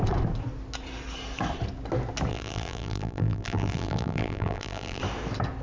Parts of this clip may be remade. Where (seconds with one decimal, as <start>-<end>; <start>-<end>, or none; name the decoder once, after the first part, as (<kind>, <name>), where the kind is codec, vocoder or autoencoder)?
2.3-5.0 (vocoder, BigVGAN v2)